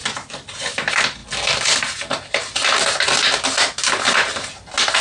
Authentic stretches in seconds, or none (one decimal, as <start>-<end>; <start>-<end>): 0.0-5.0